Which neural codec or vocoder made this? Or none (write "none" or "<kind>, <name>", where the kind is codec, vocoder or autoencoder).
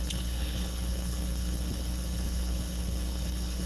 codec, HILCodec